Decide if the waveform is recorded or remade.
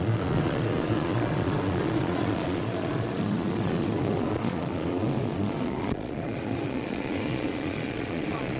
remade